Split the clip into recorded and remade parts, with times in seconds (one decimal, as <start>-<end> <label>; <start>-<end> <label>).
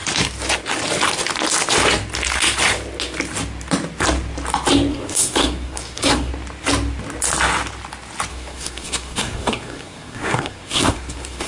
0.0-4.9 recorded; 4.9-6.3 remade; 6.3-8.3 recorded; 8.3-11.5 remade